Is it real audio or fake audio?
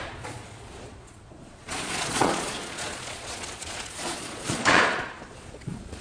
fake